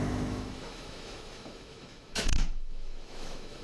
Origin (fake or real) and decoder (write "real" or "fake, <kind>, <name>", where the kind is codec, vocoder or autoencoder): fake, autoencoder, DAC-VAE